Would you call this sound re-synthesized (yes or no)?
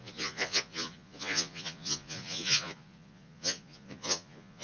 yes